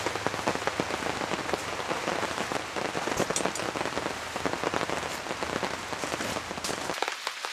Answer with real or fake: real